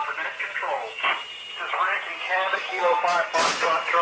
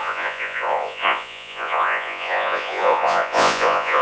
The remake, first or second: second